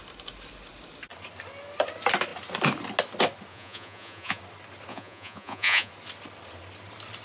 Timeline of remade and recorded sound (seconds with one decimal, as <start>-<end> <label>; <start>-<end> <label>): 0.0-3.5 recorded; 3.5-4.4 remade; 4.4-4.9 recorded; 4.9-5.9 remade; 5.9-7.2 recorded